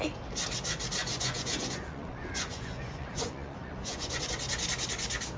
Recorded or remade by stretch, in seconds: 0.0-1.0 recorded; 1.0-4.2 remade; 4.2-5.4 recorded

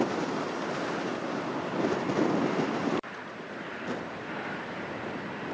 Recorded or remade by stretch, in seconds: 0.0-5.5 recorded